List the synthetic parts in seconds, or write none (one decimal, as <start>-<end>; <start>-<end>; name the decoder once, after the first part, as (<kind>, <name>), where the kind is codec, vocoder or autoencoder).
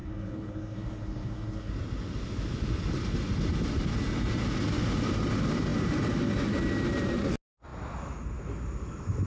0.0-1.7 (codec, SNAC)